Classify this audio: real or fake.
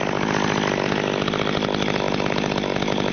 real